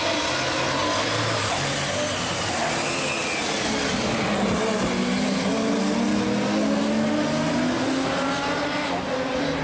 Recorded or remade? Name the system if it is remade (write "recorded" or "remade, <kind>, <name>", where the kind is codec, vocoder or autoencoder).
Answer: recorded